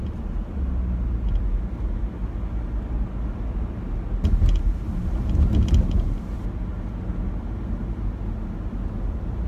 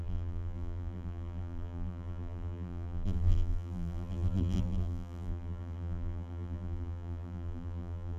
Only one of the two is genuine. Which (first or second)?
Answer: first